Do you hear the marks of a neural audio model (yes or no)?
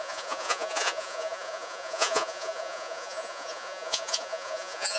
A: yes